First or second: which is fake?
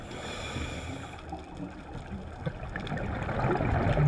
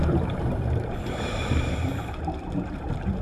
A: second